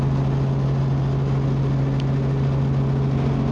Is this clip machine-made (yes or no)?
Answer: no